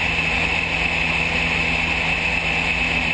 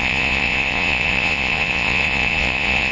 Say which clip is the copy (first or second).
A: second